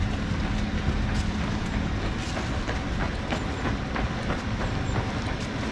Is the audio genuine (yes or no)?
yes